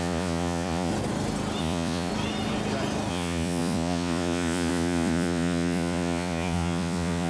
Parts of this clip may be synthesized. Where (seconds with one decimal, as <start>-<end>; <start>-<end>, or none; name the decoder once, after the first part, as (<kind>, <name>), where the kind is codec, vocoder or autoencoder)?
0.0-0.9 (vocoder, Vocos); 1.6-2.1; 3.1-7.3